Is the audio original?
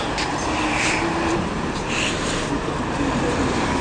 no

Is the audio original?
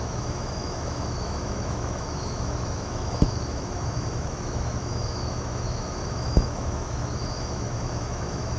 no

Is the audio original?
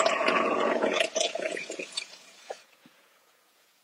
no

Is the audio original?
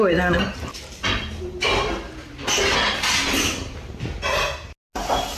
yes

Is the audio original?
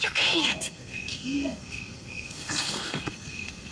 no